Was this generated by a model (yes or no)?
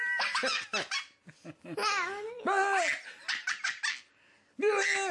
no